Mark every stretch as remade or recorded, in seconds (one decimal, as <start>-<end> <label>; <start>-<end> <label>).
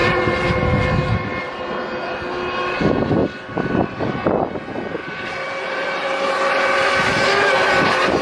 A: 0.0-0.8 remade; 0.8-5.0 recorded; 5.0-6.9 remade; 6.9-8.2 recorded